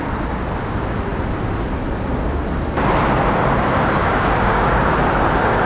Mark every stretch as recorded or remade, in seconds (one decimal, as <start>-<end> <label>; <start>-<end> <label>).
0.0-4.0 recorded; 4.0-4.9 remade; 4.9-5.7 recorded